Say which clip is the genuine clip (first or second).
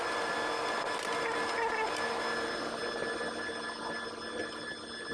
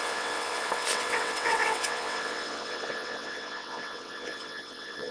first